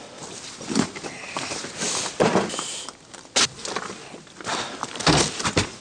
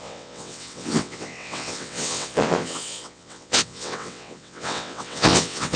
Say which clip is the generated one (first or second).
second